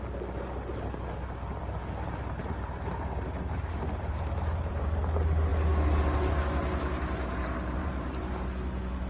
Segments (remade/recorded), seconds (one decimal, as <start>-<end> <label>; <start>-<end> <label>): 0.0-2.4 recorded; 2.4-5.0 remade; 5.0-7.8 recorded; 7.8-8.4 remade; 8.4-9.1 recorded